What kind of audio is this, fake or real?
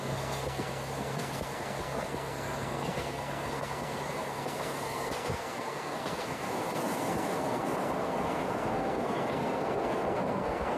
fake